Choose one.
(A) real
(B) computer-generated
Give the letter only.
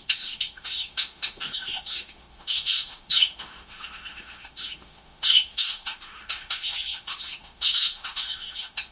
B